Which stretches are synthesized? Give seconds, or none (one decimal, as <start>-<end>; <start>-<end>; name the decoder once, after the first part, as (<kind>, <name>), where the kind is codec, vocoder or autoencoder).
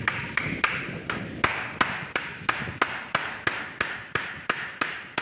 none